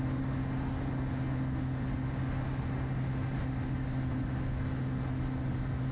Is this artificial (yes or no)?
no